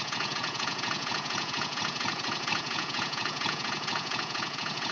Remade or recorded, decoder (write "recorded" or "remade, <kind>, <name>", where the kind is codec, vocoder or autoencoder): remade, vocoder, Vocos